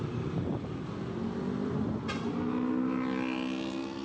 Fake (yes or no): no